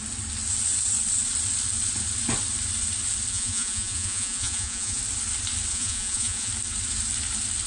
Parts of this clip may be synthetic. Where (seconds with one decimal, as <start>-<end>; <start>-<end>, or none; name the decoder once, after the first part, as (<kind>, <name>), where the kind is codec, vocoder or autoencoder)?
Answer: 3.3-5.0 (vocoder, Vocos); 5.7-6.5